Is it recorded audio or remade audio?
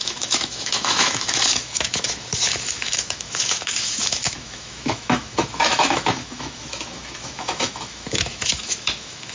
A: remade